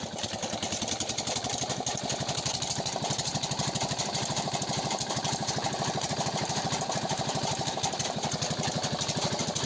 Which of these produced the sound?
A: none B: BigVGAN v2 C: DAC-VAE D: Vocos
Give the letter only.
B